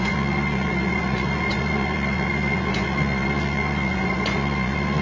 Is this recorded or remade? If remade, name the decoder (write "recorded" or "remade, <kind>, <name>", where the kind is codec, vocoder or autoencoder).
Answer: remade, vocoder, Vocos